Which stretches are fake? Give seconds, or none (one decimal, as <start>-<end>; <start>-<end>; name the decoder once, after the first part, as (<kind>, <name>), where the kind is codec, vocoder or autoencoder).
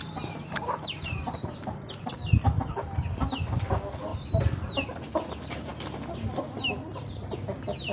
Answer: 0.0-2.1 (vocoder, BigVGAN v2); 4.1-4.6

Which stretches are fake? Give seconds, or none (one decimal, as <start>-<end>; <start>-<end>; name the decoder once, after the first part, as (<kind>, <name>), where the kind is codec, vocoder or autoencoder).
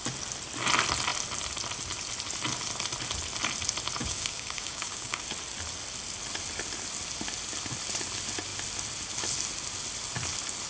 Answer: 4.0-5.2 (codec, DAC)